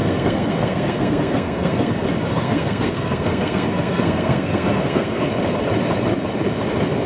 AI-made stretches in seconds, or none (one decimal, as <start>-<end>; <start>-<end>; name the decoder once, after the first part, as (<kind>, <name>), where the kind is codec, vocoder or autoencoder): 0.0-1.9 (codec, SNAC); 2.3-5.3